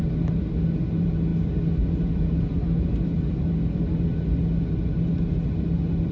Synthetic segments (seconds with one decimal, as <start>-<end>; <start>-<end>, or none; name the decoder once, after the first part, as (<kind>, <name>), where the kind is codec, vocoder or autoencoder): none